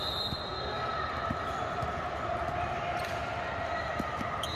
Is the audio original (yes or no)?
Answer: yes